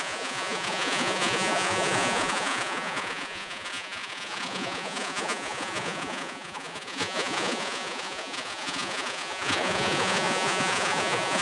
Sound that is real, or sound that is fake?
fake